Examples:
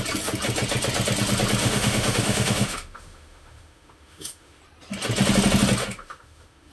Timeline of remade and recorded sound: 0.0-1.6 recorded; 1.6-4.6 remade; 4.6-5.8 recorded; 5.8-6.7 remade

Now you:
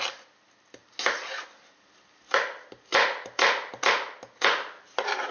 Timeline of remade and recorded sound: 0.0-5.3 recorded

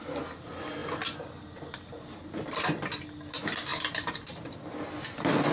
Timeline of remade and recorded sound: 0.0-3.7 recorded; 3.7-4.6 remade; 4.6-5.5 recorded

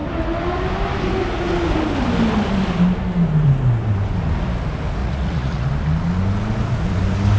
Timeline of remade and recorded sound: 0.0-5.0 recorded; 5.0-5.7 remade; 5.7-7.4 recorded

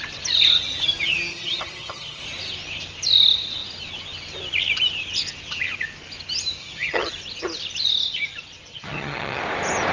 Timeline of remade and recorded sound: 0.0-1.3 recorded; 1.3-2.2 remade; 2.2-6.6 recorded; 6.6-7.1 remade; 7.1-8.7 recorded; 8.7-9.4 remade; 9.4-9.9 recorded

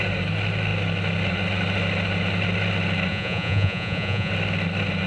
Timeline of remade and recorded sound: 0.0-3.1 recorded; 3.1-4.3 remade; 4.3-5.1 recorded

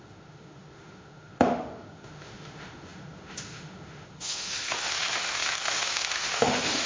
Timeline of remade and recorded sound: 0.0-6.9 remade

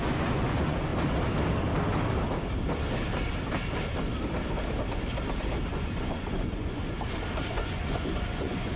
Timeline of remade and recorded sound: 0.0-0.9 remade; 0.9-5.7 recorded; 5.7-6.8 remade; 6.8-7.5 recorded; 7.5-8.8 remade